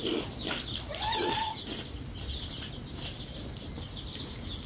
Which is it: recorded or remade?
recorded